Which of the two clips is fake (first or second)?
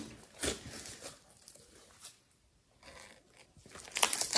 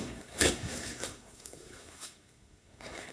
second